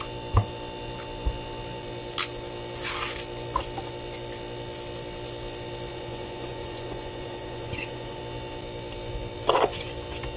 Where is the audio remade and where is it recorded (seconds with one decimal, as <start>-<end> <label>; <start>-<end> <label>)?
0.0-5.9 recorded; 5.9-8.2 remade; 8.2-10.4 recorded